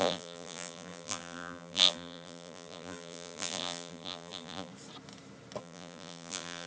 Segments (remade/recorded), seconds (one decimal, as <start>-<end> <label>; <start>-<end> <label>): 0.0-4.7 remade; 4.7-5.6 recorded; 5.6-6.7 remade